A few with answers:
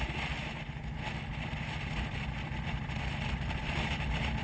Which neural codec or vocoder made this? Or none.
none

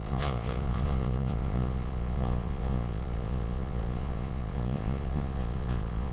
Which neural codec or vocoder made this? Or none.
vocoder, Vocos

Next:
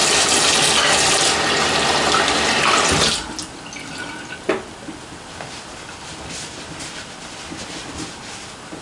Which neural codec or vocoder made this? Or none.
none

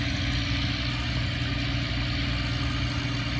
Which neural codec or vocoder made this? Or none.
none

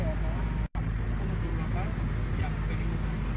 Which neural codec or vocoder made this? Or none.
none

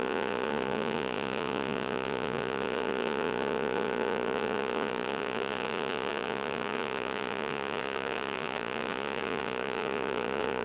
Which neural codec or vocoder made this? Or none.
vocoder, Vocos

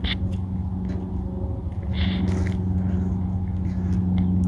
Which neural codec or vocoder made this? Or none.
none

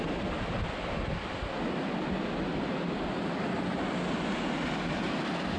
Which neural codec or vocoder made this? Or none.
none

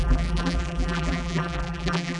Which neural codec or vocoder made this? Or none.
vocoder, BigVGAN v2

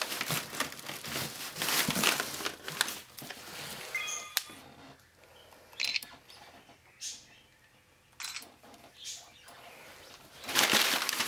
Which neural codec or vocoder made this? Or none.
none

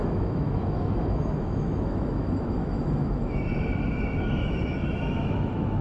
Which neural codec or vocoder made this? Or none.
autoencoder, DAC-VAE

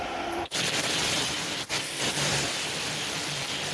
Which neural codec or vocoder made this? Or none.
vocoder, BigVGAN v2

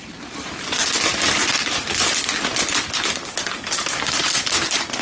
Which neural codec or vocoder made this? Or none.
none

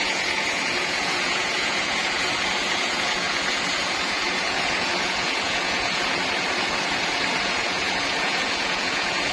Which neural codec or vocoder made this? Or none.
vocoder, Vocos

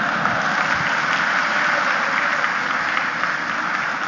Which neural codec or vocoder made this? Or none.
none